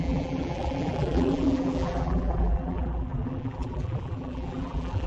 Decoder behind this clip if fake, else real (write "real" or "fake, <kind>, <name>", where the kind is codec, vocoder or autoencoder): fake, vocoder, BigVGAN v2